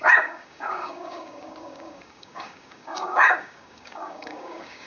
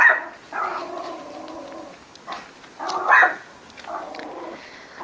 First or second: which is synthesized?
first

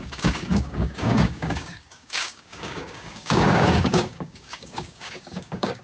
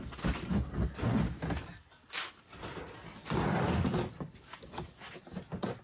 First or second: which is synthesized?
first